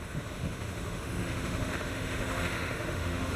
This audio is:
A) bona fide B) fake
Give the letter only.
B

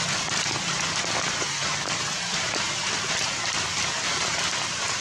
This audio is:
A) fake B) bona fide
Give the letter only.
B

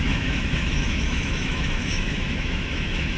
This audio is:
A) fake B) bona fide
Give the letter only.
A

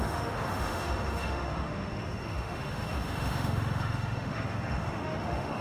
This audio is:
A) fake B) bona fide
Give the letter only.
A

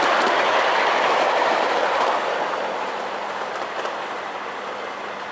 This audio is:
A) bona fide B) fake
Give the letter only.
A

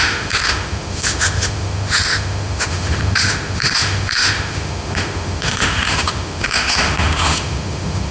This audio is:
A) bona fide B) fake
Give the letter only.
B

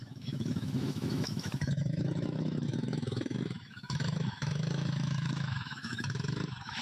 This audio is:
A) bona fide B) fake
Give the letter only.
B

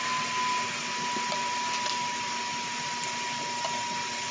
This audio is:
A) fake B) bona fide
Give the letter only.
B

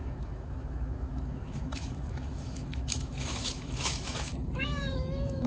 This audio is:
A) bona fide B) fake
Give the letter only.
B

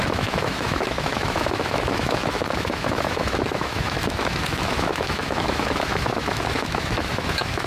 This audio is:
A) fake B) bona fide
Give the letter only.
A